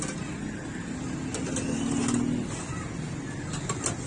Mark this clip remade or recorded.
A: recorded